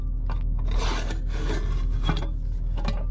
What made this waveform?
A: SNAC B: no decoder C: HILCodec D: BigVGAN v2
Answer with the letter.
B